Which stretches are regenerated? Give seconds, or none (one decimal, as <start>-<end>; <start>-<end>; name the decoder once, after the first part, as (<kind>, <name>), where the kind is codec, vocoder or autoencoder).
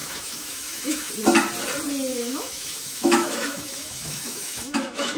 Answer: 0.0-1.1 (autoencoder, DAC-VAE); 2.1-5.2